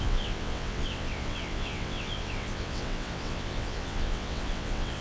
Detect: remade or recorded remade